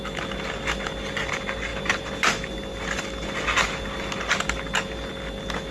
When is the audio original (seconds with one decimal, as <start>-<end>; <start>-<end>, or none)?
0.0-5.7